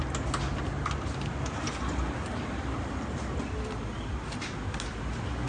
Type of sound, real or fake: real